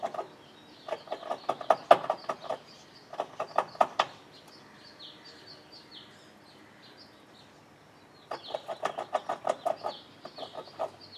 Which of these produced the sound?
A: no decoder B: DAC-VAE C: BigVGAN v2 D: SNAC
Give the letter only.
A